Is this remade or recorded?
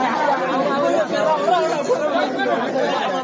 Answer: recorded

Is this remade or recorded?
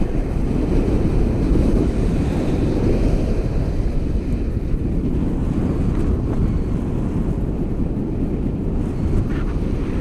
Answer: recorded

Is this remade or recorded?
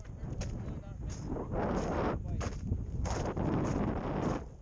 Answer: recorded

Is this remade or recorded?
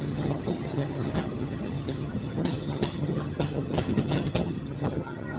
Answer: remade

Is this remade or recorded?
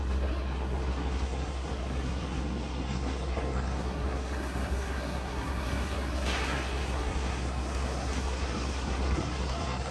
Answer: remade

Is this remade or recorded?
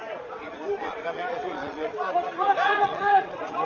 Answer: remade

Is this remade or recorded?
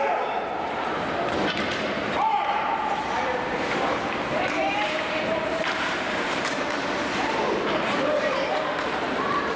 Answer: remade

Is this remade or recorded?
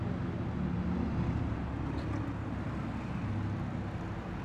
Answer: recorded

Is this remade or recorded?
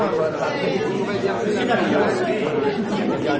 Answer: recorded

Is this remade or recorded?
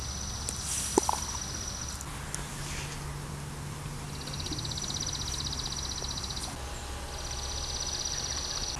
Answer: recorded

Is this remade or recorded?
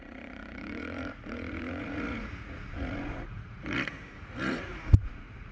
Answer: remade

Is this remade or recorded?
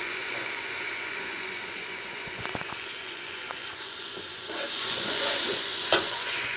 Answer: remade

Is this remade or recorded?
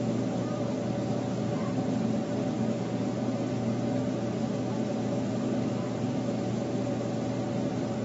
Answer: recorded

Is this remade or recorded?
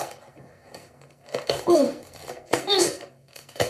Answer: remade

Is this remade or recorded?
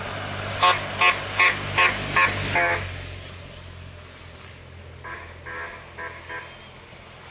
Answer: recorded